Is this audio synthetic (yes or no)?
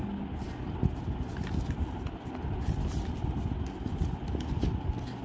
no